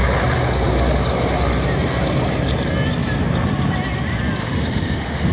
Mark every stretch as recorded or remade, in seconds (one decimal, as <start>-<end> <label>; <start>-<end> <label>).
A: 0.0-4.4 recorded; 4.4-5.3 remade